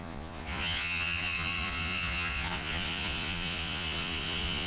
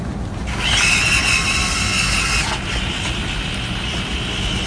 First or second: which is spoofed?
first